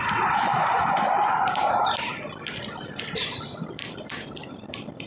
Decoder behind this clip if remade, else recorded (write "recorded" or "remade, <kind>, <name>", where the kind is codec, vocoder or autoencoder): remade, vocoder, BigVGAN v2